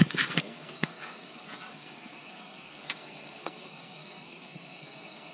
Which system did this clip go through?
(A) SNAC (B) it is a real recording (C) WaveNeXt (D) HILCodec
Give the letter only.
A